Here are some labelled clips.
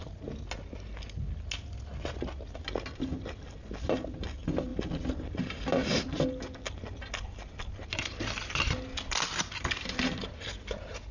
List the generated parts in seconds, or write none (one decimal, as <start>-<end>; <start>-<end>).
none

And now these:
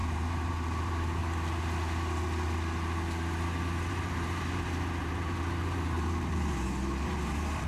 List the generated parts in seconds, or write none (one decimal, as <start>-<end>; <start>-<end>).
0.0-1.2; 3.9-7.7

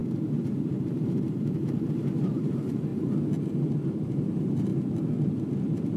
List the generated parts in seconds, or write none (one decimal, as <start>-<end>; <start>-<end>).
0.0-2.9; 3.5-4.7; 5.6-6.0